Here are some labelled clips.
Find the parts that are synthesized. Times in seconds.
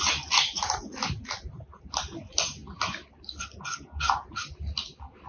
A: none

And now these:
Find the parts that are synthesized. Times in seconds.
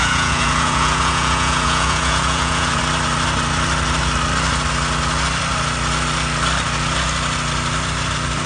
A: 0.0-2.8 (vocoder, Vocos)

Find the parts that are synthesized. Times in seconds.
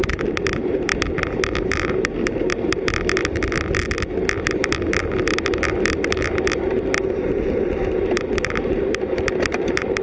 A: 0.0-0.9 (vocoder, BigVGAN v2); 1.6-2.5; 7.6-10.0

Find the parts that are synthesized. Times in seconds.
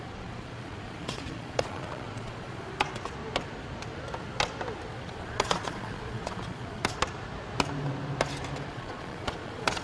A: 0.0-2.7 (vocoder, Vocos); 4.9-6.8; 8.7-9.8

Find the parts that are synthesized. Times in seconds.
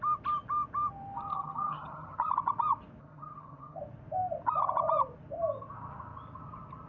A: 1.3-2.3 (vocoder, HiFi-GAN); 3.0-3.8